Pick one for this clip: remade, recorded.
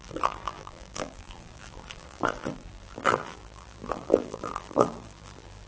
remade